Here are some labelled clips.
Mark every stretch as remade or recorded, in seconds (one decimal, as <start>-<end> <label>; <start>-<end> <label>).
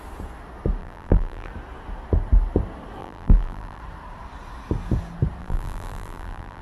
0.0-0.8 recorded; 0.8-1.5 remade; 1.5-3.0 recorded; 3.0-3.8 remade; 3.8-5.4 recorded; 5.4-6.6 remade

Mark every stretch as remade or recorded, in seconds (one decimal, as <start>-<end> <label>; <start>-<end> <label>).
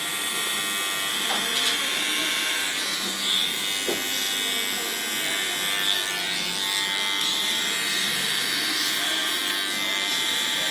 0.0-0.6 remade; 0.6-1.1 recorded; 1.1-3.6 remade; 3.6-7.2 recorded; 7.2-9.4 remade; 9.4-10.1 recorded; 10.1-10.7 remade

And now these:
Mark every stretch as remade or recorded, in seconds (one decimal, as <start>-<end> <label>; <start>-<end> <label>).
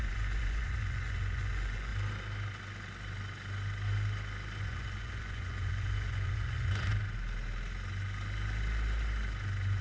0.0-1.9 remade; 1.9-4.6 recorded; 4.6-6.9 remade; 6.9-9.8 recorded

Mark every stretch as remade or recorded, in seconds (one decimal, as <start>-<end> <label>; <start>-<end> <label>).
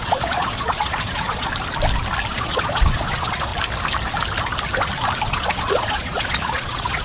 0.0-1.5 remade; 1.5-2.3 recorded; 2.3-3.5 remade; 3.5-5.3 recorded; 5.3-7.0 remade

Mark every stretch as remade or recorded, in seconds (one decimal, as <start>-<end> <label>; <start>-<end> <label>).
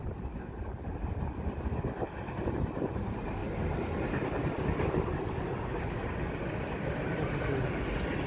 0.0-8.3 recorded